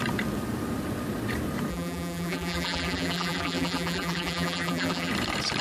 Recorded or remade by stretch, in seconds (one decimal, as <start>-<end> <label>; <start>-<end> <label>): 0.0-1.7 recorded; 1.7-5.1 remade; 5.1-5.6 recorded